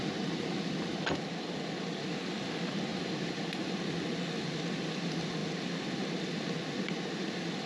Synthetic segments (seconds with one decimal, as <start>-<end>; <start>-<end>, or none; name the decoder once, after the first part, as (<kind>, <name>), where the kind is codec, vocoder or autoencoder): none